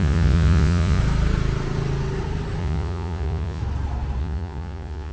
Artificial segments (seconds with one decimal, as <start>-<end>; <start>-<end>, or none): 0.0-1.0; 2.6-3.6; 4.2-5.1